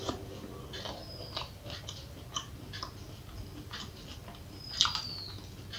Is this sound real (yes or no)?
yes